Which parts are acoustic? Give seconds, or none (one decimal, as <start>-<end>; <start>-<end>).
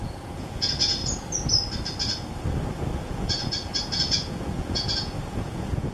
1.0-2.9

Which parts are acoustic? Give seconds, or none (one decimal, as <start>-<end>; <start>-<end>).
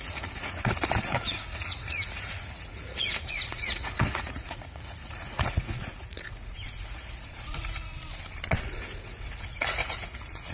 7.9-8.6